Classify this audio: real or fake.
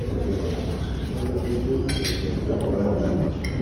real